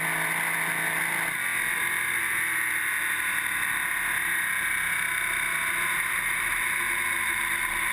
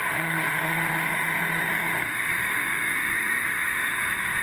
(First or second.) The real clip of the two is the first